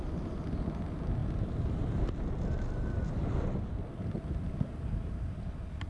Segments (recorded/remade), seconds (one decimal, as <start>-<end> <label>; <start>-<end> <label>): 0.0-5.9 recorded